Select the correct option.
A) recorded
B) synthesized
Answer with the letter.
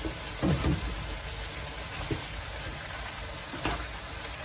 A